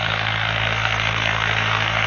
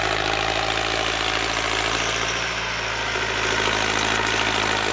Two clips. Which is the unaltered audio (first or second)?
second